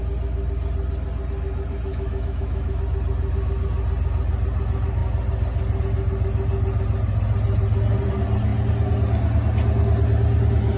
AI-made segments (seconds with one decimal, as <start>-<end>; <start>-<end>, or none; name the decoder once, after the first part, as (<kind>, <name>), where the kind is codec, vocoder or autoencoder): 1.9-2.8 (autoencoder, DAC-VAE)